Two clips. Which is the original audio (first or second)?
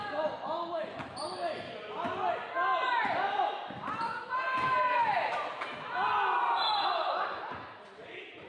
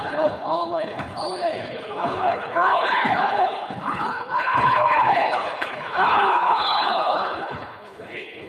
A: first